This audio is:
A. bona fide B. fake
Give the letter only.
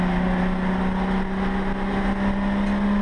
A